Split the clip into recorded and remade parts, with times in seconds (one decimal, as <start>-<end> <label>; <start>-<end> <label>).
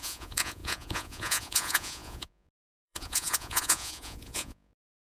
0.0-5.0 remade